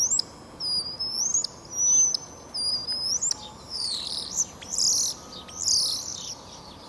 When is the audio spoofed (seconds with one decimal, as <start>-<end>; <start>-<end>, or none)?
none